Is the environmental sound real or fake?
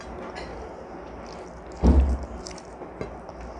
real